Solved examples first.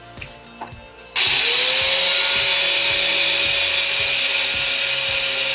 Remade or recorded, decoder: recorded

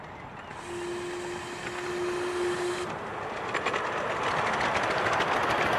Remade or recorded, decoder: recorded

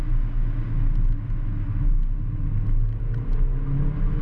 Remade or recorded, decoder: recorded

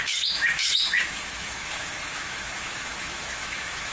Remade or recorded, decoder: remade, autoencoder, DAC-VAE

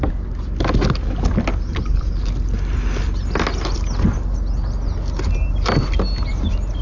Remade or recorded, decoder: recorded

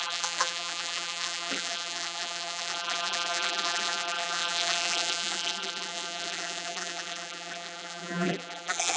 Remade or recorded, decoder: remade, vocoder, BigVGAN v2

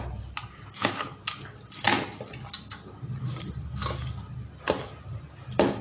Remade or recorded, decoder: recorded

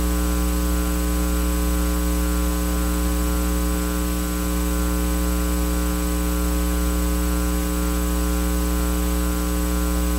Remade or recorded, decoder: recorded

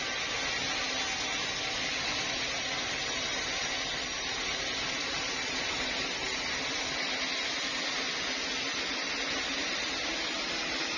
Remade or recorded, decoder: recorded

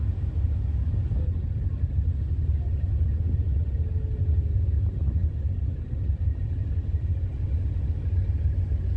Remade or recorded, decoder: recorded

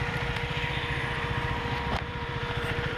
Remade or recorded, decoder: remade, vocoder, BigVGAN v2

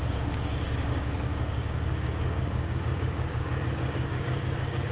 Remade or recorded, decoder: remade, codec, DAC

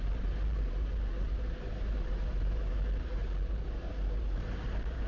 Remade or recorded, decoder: remade, vocoder, BigVGAN v2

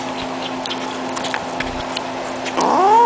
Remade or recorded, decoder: recorded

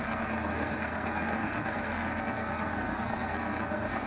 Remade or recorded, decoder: remade, codec, SNAC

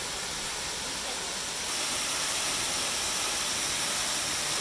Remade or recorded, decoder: recorded